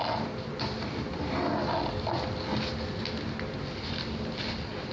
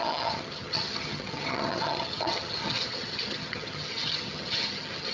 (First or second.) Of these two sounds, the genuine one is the first